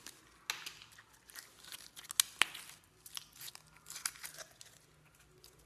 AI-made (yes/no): no